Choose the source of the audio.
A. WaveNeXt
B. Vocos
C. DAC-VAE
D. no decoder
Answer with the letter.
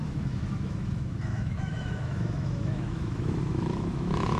C